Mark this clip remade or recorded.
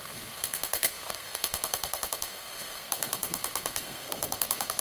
remade